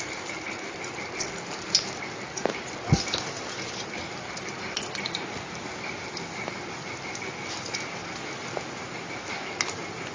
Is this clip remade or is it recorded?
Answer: recorded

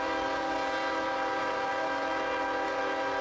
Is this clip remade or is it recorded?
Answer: recorded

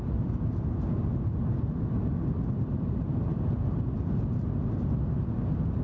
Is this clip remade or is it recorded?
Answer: recorded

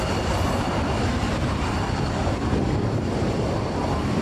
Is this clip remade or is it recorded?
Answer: remade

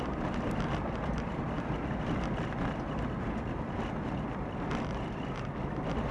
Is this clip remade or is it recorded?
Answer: recorded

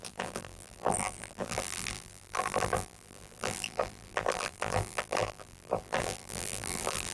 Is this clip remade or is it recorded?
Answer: remade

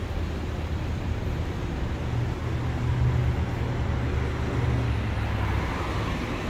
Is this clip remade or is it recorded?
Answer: recorded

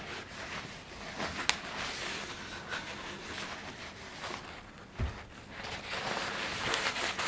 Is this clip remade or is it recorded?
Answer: recorded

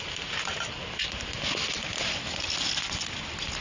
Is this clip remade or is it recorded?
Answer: recorded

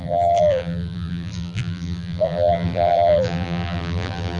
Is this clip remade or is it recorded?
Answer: remade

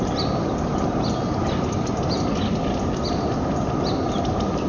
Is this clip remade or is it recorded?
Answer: recorded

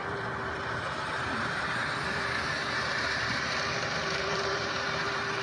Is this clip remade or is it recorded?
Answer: remade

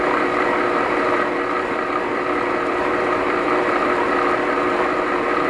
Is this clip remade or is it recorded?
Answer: remade